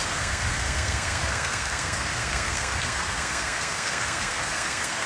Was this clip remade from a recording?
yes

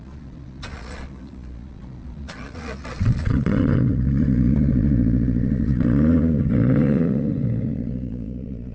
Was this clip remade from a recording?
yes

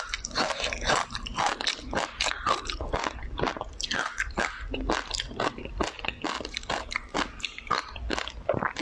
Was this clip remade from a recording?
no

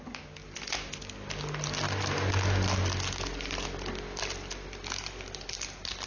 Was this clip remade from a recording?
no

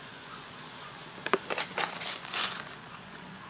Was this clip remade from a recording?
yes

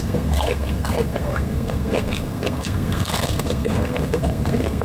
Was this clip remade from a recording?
yes